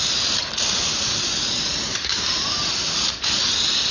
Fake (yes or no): no